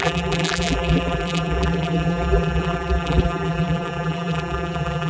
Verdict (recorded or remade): remade